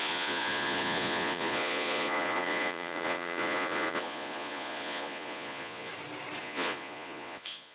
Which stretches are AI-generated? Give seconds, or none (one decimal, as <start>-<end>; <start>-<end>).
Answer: 0.0-5.9; 6.4-7.7